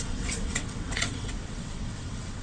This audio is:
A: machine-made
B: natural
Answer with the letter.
A